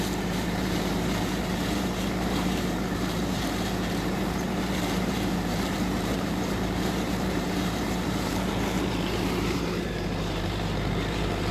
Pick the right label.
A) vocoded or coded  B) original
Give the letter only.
A